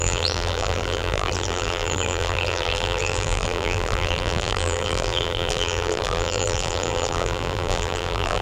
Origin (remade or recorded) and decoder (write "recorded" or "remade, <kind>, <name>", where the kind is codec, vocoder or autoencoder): remade, vocoder, BigVGAN v2